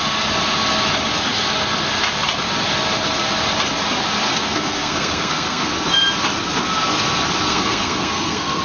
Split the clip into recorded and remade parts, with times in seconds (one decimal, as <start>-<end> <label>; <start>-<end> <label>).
0.0-4.3 recorded; 4.3-5.7 remade; 5.7-7.5 recorded; 7.5-8.6 remade

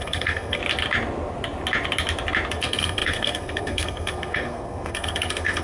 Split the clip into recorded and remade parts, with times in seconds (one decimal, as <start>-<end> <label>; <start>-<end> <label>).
0.0-0.6 remade; 0.6-2.5 recorded; 2.5-5.6 remade

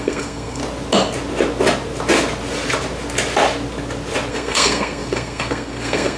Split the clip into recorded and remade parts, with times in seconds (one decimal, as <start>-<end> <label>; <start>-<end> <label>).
0.0-0.6 remade; 0.6-4.3 recorded; 4.3-6.2 remade